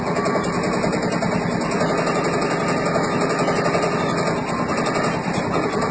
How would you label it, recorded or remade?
recorded